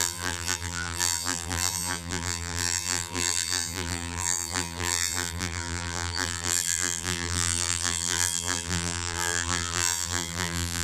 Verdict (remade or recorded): remade